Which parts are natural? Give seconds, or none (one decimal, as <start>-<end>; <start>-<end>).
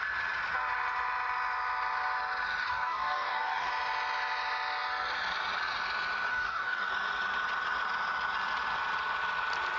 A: 0.0-2.6; 3.7-6.3; 6.9-9.8